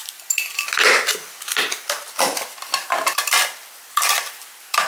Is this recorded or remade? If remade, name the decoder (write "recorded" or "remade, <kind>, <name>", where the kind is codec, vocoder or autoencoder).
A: recorded